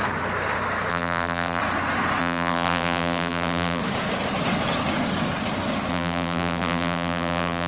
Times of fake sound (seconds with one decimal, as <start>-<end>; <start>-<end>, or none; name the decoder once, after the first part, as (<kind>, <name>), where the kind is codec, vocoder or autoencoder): 0.9-1.6 (vocoder, BigVGAN v2); 2.2-3.8; 5.9-7.7